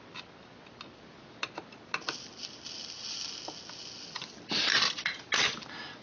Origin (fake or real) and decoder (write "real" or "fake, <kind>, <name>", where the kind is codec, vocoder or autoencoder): real